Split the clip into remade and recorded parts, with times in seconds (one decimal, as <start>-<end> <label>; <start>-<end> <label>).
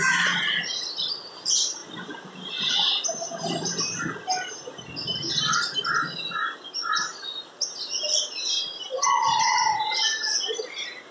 0.0-11.1 recorded